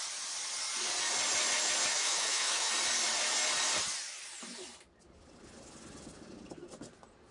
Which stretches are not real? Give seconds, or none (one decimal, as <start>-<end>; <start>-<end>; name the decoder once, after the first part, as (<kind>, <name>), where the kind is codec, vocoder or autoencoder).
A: 1.9-2.7 (autoencoder, DAC-VAE)